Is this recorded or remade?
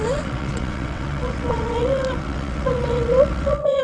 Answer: remade